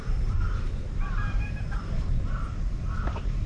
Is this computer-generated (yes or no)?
yes